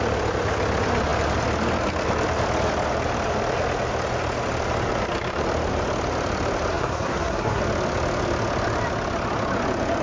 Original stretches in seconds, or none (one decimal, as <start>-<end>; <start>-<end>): 0.0-6.7; 7.6-10.0